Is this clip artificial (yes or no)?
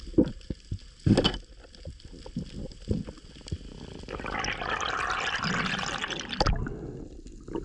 no